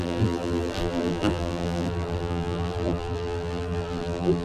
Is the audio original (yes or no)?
no